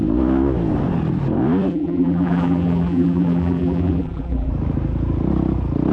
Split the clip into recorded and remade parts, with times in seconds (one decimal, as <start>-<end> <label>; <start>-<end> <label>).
0.0-1.7 recorded; 1.7-4.5 remade; 4.5-5.9 recorded